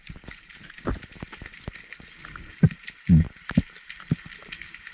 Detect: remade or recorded recorded